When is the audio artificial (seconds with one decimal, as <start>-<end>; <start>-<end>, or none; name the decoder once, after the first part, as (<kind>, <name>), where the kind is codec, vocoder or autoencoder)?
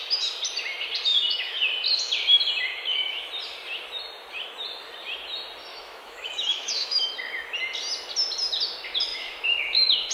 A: 1.1-1.6 (autoencoder, DAC-VAE); 2.7-3.3; 5.7-7.1; 9.1-10.1